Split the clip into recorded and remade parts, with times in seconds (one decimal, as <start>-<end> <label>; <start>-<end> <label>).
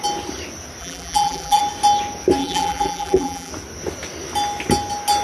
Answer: 0.0-0.8 recorded; 0.8-1.6 remade; 1.6-2.4 recorded; 2.4-3.5 remade; 3.5-5.2 recorded